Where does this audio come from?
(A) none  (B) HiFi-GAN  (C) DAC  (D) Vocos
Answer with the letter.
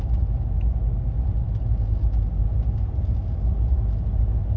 A